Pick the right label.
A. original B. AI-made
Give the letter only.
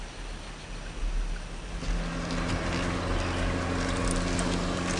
A